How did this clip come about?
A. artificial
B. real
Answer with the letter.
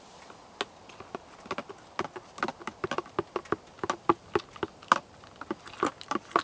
B